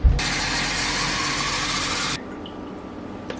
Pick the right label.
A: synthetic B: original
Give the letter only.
B